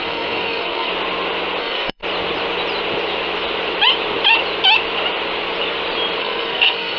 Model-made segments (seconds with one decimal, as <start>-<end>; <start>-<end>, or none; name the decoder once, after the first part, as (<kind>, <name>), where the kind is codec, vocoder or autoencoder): 0.0-0.9 (codec, SNAC); 1.6-2.0; 6.2-7.0